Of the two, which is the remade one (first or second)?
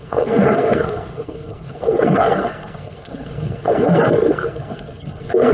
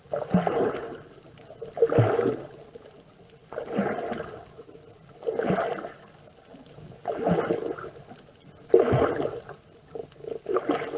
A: first